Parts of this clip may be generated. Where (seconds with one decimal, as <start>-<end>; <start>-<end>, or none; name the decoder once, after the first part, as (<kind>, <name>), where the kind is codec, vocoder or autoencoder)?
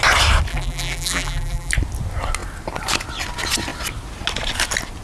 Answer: 0.5-1.7 (vocoder, BigVGAN v2)